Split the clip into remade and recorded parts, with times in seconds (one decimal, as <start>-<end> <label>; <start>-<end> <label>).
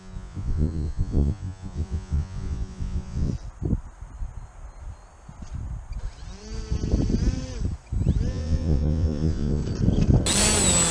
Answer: 0.0-3.3 remade; 3.3-8.3 recorded; 8.3-9.6 remade; 9.6-10.9 recorded